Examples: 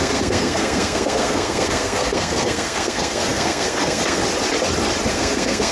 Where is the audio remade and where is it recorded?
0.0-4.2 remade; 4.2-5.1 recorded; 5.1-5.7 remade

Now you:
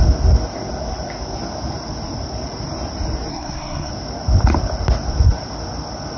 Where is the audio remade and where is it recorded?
0.0-3.3 recorded; 3.3-3.9 remade; 3.9-6.2 recorded

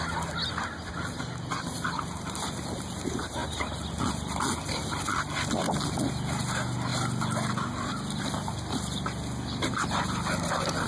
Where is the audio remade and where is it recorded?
0.0-10.9 recorded

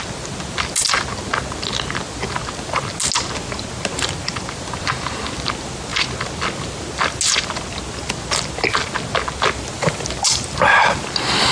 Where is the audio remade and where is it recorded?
0.0-11.5 recorded

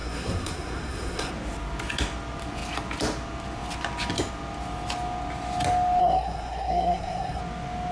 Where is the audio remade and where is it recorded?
0.0-1.3 remade; 1.3-6.0 recorded; 6.0-7.4 remade; 7.4-7.9 recorded

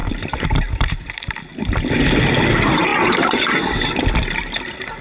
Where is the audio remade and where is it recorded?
0.0-1.3 remade; 1.3-5.0 recorded

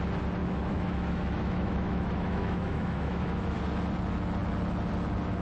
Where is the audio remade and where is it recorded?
0.0-0.4 recorded; 0.4-3.6 remade; 3.6-5.4 recorded

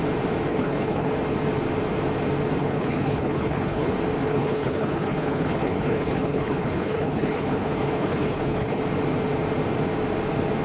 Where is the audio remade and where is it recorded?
0.0-0.5 recorded; 0.5-1.1 remade; 1.1-2.6 recorded; 2.6-3.9 remade; 3.9-4.3 recorded; 4.3-8.8 remade; 8.8-10.6 recorded